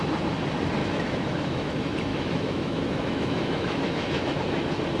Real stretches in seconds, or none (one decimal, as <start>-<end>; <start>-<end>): 0.0-0.8; 1.7-2.1; 4.4-5.0